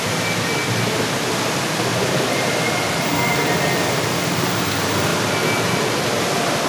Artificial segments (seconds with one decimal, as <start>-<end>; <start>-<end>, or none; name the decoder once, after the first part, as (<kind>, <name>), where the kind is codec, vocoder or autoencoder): 1.9-2.9 (vocoder, BigVGAN v2)